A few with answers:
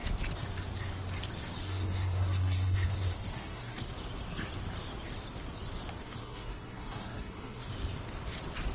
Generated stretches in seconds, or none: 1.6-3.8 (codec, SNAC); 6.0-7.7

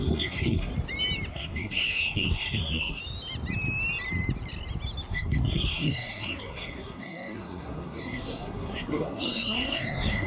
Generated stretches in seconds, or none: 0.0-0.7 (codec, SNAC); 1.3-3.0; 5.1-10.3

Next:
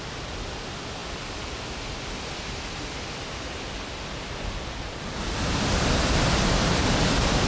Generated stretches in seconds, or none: none